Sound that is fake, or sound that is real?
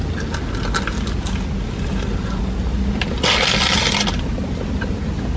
real